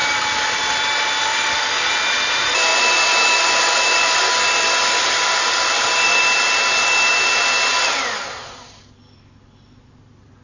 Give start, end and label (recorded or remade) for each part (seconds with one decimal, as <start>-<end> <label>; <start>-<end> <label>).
0.0-0.6 remade; 0.6-1.3 recorded; 1.3-1.9 remade; 1.9-2.7 recorded; 2.7-6.2 remade; 6.2-10.4 recorded